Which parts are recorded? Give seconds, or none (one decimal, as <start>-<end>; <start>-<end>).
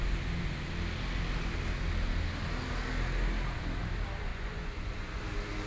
0.0-4.3; 5.2-5.7